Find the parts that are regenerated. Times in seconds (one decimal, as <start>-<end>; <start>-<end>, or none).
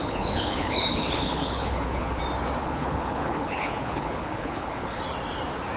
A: 0.0-2.2; 2.6-5.0